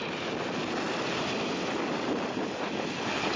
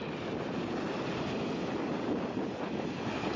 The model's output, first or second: second